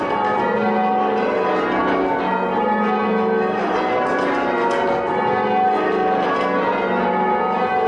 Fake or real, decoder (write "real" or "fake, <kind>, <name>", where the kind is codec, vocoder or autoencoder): real